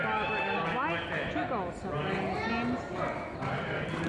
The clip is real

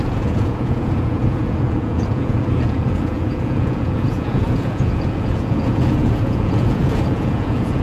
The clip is fake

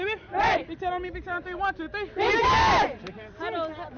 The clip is real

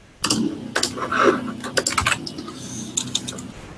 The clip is real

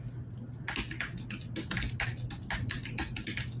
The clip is real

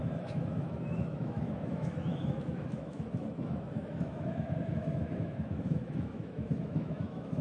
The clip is fake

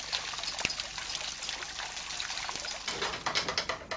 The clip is real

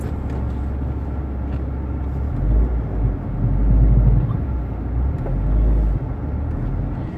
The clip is real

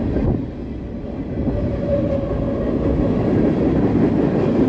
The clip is real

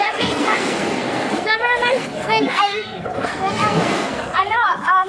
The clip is fake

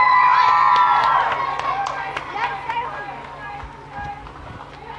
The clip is real